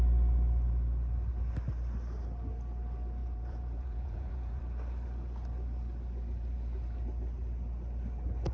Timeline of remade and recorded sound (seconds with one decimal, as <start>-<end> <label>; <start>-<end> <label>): 0.0-3.2 recorded; 3.2-4.6 remade; 4.6-8.5 recorded